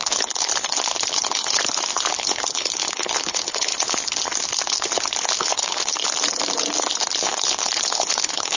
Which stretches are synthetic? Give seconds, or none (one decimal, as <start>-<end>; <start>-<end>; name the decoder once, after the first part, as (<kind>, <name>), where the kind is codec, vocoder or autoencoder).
0.0-0.5 (codec, HILCodec); 1.1-1.6; 2.1-3.7; 5.4-6.0; 7.2-8.6